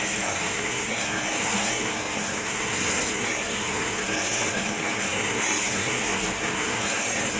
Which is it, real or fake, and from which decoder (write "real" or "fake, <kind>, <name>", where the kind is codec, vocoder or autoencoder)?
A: fake, codec, SNAC